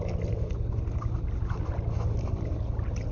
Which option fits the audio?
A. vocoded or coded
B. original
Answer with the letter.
B